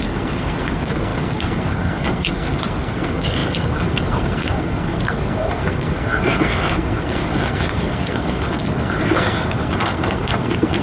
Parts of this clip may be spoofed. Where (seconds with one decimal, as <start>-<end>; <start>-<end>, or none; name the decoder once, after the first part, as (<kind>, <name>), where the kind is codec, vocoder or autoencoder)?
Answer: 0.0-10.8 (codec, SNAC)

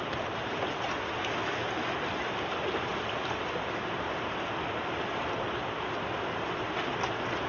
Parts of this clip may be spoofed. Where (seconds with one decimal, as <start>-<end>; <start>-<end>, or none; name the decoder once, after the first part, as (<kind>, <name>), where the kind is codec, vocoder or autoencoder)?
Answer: none

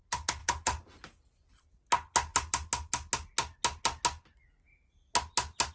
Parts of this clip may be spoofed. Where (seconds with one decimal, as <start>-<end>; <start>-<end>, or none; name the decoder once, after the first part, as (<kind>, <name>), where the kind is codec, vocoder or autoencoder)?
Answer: none

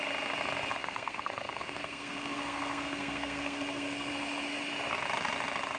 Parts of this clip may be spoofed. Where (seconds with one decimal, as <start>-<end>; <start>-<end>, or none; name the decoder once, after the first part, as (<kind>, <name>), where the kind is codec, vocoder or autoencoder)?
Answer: 0.8-4.1 (codec, SNAC)

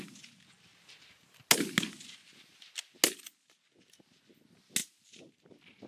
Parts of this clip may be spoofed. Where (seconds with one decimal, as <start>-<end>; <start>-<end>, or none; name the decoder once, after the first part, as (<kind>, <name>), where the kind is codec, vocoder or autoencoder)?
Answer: none

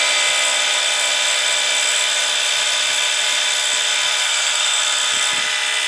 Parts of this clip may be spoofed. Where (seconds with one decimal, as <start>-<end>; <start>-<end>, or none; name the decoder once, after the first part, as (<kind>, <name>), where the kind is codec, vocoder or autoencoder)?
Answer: 4.2-4.8 (codec, SNAC)